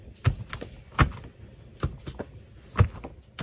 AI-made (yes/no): no